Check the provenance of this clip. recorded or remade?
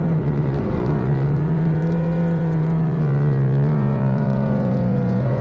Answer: remade